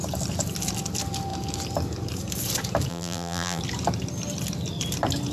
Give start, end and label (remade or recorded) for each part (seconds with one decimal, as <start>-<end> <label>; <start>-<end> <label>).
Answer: 0.0-2.9 recorded; 2.9-3.6 remade; 3.6-5.3 recorded